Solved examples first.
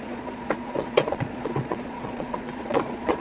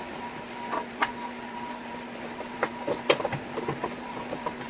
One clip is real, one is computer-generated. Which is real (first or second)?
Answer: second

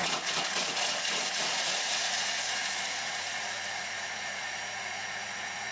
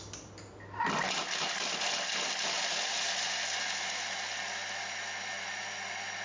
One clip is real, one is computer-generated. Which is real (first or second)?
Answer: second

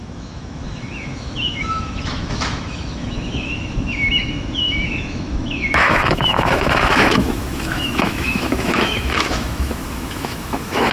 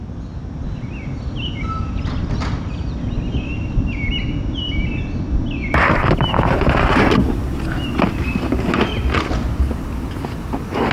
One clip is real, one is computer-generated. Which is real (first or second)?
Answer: second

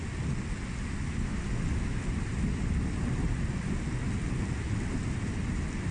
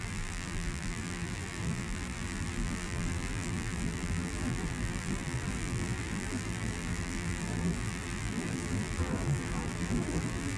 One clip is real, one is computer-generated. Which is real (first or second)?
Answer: first